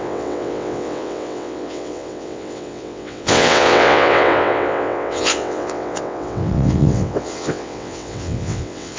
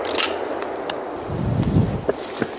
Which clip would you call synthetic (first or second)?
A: first